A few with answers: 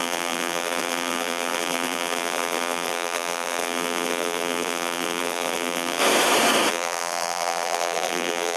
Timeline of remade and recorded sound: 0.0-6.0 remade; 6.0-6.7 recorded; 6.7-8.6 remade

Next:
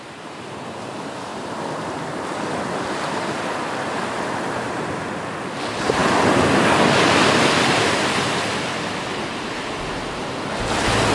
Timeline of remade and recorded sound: 0.0-1.3 recorded; 1.3-4.0 remade; 4.0-11.1 recorded

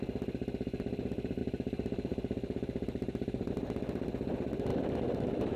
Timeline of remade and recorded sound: 0.0-1.4 recorded; 1.4-3.5 remade; 3.5-5.6 recorded

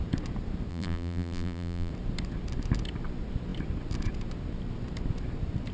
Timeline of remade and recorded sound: 0.0-0.7 recorded; 0.7-1.9 remade; 1.9-5.7 recorded